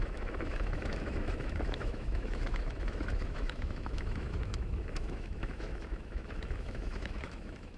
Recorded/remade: remade